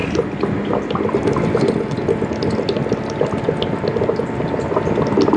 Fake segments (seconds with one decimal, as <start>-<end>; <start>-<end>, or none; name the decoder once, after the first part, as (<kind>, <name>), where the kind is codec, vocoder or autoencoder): none